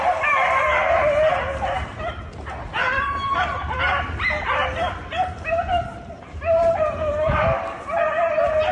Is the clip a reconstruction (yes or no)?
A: no